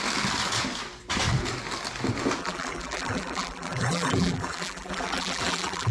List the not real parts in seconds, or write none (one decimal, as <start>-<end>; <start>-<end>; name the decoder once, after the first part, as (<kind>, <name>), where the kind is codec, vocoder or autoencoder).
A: 2.4-5.9 (vocoder, BigVGAN v2)